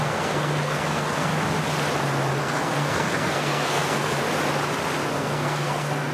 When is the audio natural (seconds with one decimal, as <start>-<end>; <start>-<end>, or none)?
1.3-2.4; 4.2-5.1

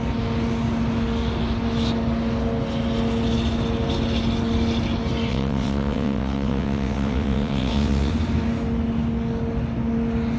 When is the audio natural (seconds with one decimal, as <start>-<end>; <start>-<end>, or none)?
0.0-5.3; 8.1-10.4